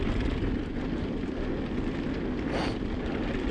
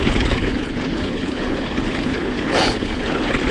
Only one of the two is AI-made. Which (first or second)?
second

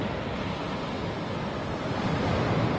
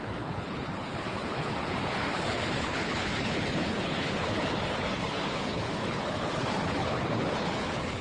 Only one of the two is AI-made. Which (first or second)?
second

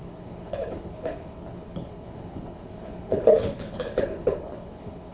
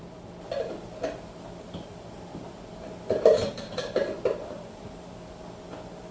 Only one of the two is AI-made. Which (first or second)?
first